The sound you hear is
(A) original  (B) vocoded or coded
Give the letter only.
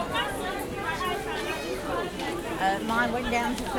A